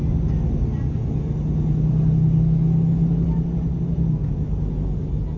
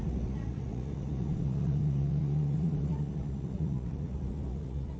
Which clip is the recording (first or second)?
first